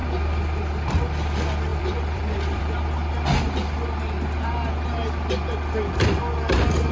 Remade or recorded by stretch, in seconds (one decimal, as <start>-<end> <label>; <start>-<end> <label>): 0.0-1.7 recorded; 1.7-2.6 remade; 2.6-6.9 recorded